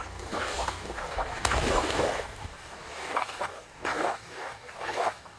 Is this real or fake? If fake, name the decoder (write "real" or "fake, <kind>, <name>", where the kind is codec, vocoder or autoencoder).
fake, codec, DAC